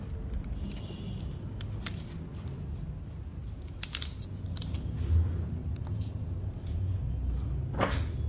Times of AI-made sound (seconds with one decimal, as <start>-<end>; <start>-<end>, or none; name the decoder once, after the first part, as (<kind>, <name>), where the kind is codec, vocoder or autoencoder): none